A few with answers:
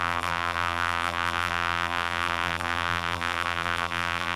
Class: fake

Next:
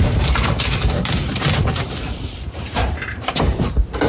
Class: fake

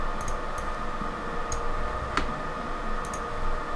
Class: real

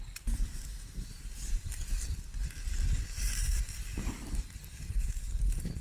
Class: fake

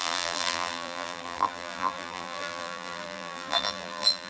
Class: fake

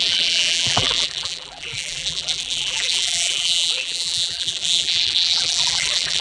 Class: fake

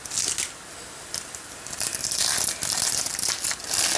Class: real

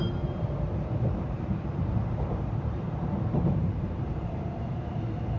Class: fake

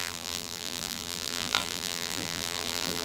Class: fake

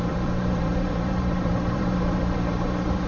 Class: fake